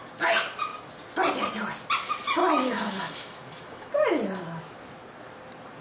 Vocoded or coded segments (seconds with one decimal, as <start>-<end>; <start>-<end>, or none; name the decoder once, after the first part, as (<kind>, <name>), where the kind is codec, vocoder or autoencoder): 2.4-3.9 (autoencoder, DAC-VAE)